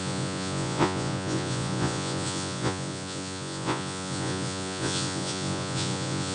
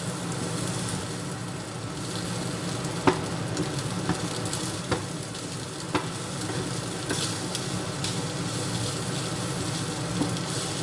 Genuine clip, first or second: second